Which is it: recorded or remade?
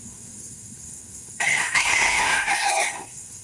remade